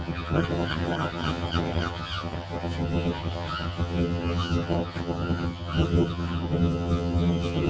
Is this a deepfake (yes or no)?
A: yes